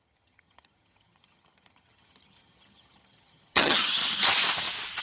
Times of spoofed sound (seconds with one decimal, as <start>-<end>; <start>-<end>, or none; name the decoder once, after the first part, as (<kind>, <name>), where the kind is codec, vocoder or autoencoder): 0.0-4.0 (vocoder, HiFi-GAN)